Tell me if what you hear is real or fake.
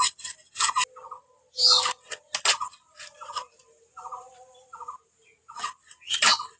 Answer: real